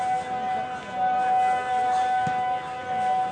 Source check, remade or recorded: recorded